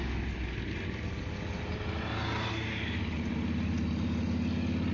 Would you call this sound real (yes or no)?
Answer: yes